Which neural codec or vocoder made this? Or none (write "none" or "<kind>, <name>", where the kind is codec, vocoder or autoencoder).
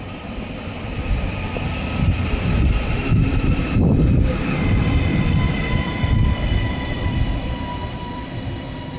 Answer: vocoder, BigVGAN v2